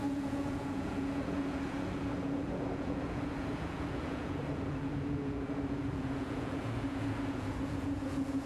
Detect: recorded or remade remade